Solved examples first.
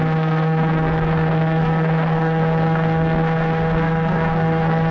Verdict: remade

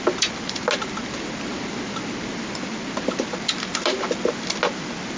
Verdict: recorded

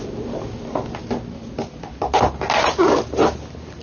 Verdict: recorded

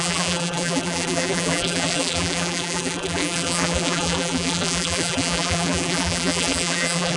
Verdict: remade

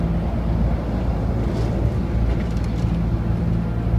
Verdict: recorded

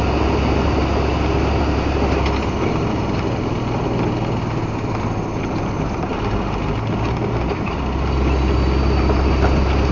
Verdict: recorded